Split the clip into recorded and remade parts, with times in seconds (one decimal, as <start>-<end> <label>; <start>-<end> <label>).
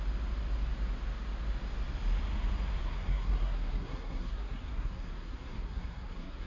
0.0-2.8 recorded; 2.8-6.5 remade